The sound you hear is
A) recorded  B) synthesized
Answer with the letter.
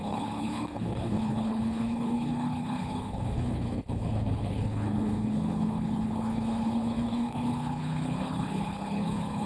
B